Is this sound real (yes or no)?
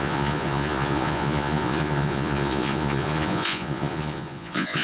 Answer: no